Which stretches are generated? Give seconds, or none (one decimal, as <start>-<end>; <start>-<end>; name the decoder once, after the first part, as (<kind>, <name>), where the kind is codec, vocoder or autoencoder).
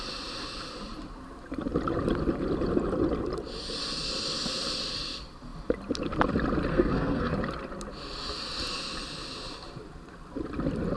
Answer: 6.7-7.3 (codec, SNAC)